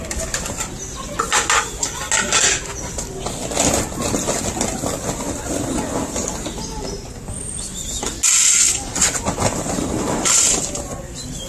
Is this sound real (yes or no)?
yes